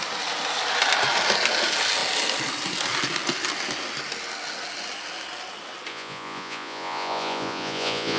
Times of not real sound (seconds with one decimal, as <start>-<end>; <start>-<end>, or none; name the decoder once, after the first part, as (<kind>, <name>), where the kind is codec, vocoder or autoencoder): 5.9-8.2 (vocoder, Vocos)